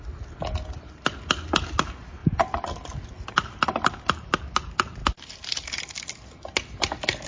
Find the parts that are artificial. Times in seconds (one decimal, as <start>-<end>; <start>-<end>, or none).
none